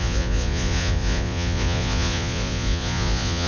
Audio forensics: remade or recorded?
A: remade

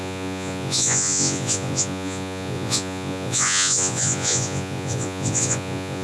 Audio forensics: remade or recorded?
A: remade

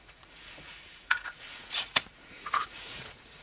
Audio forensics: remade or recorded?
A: remade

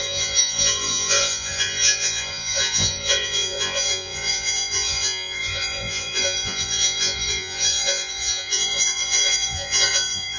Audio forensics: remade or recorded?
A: remade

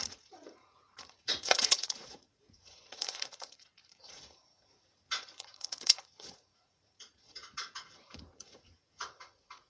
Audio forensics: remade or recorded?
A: remade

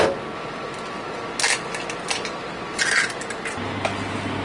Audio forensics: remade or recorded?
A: recorded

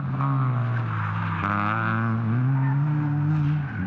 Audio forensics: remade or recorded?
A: recorded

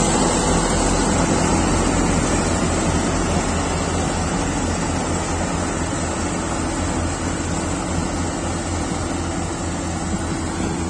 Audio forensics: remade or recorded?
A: recorded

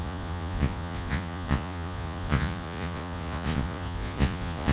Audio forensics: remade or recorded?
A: remade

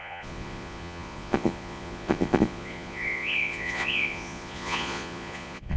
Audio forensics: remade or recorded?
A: remade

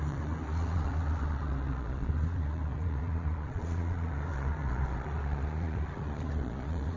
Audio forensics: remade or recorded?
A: remade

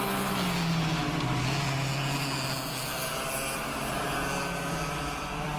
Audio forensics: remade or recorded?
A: recorded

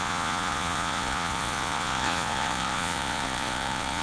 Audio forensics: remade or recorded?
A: remade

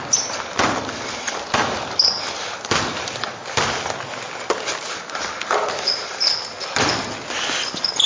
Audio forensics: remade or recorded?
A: recorded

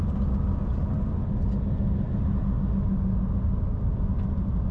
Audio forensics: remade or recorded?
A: recorded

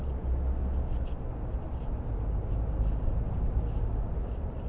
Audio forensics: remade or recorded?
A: recorded